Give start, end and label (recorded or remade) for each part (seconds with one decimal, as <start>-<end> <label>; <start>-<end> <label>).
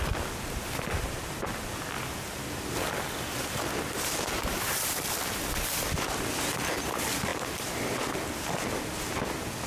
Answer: 0.0-9.7 recorded